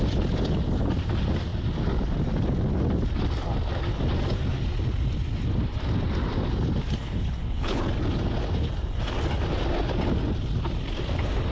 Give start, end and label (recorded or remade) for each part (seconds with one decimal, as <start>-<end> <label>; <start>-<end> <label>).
0.0-7.0 recorded; 7.0-7.8 remade; 7.8-11.5 recorded